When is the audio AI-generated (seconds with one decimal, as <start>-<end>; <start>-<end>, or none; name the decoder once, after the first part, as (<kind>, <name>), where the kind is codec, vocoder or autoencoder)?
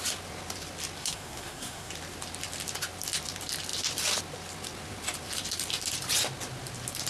1.0-1.9 (codec, SNAC)